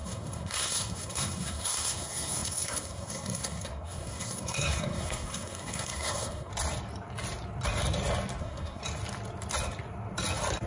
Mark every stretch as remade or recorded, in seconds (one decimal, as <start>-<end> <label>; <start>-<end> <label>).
0.0-6.5 remade; 6.5-8.4 recorded; 8.4-8.8 remade; 8.8-10.7 recorded